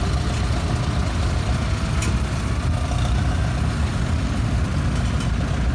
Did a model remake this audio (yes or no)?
no